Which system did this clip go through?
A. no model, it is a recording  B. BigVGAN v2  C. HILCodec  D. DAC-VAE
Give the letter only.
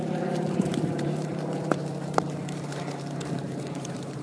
B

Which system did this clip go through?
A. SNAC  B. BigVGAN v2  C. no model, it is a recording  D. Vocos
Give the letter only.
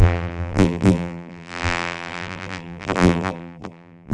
B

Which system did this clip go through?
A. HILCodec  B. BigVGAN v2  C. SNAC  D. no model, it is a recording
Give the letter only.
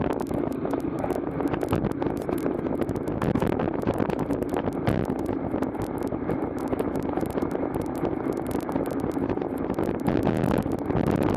D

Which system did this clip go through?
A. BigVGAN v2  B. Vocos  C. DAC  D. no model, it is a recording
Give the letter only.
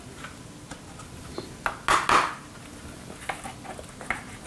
D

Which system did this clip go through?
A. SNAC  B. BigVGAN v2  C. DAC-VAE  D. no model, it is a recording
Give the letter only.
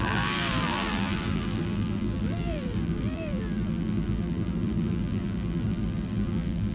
B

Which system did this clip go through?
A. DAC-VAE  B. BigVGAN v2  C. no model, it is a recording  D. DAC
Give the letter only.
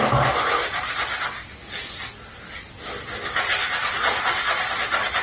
C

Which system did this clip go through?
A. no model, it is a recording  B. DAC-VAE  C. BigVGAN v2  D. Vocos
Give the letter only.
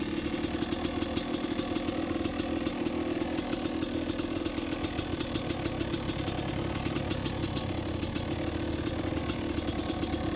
A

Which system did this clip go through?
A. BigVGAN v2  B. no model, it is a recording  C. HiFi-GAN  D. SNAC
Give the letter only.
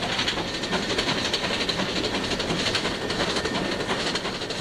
B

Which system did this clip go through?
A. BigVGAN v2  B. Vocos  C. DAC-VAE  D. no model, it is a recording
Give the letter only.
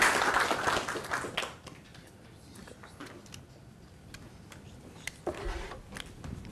D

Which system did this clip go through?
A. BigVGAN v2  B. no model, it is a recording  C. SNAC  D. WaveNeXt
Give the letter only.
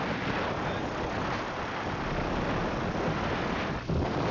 B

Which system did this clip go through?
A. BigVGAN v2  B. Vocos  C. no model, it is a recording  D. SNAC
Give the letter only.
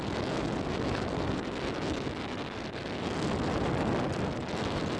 C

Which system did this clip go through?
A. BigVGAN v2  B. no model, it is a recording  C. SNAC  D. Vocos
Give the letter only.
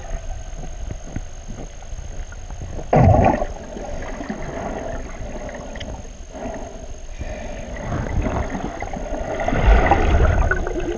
B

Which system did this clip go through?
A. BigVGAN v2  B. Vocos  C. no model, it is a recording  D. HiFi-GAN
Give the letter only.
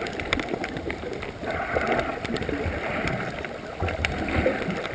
C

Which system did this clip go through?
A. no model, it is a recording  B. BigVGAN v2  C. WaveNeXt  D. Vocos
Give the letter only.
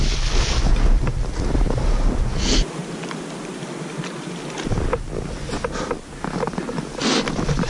A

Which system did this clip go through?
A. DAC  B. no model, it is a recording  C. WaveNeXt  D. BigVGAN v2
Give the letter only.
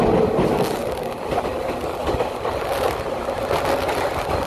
B